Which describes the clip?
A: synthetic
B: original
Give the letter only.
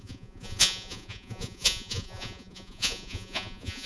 A